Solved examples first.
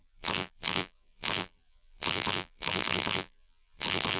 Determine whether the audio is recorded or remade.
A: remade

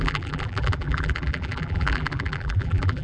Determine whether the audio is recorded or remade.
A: remade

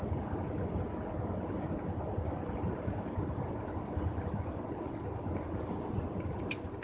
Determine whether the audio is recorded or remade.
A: recorded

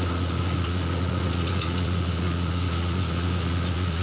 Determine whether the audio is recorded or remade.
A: remade